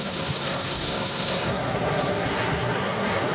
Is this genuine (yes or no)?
no